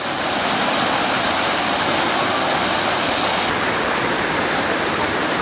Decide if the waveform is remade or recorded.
recorded